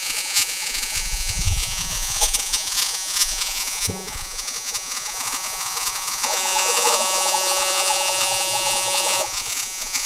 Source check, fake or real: fake